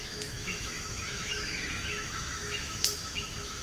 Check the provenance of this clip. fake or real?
fake